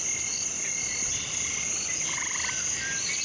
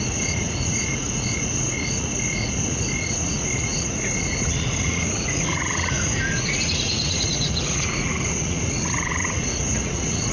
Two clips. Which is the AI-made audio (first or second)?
second